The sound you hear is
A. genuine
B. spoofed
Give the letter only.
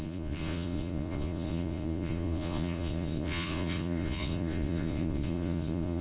B